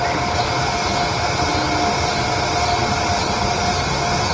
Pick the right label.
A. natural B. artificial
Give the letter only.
A